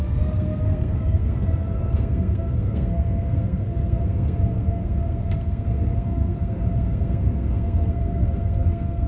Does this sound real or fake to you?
fake